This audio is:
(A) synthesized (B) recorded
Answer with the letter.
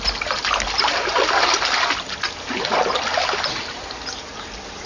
B